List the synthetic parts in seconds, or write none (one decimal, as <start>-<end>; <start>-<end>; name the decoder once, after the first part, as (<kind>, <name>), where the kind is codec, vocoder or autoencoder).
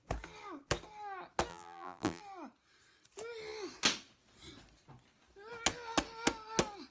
1.5-2.2 (vocoder, BigVGAN v2)